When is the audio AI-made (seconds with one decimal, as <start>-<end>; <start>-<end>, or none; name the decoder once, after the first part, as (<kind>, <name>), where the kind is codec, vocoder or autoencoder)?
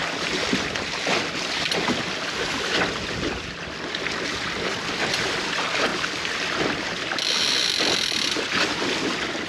none